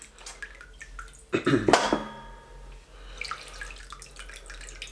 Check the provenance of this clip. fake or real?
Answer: real